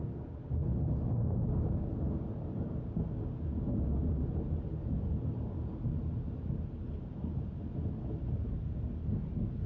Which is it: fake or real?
real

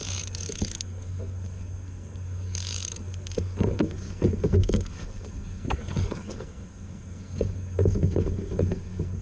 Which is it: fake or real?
fake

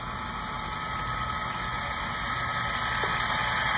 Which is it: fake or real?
real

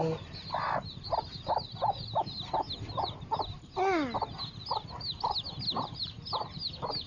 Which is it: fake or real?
real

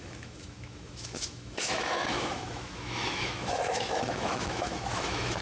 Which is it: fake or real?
fake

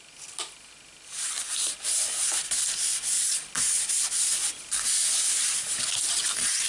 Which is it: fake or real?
real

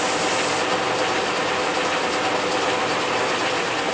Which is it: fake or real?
real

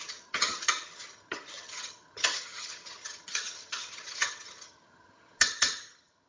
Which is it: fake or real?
fake